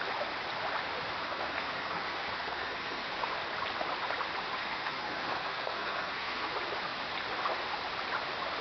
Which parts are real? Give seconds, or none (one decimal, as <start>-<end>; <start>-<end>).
0.0-1.2; 3.3-4.6; 6.5-8.6